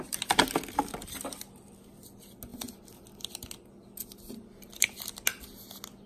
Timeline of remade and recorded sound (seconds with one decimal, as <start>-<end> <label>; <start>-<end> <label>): 0.0-6.1 recorded